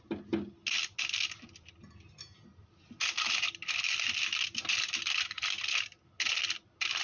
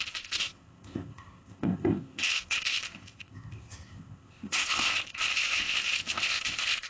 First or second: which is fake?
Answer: second